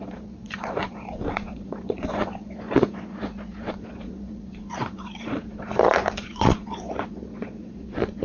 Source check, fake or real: fake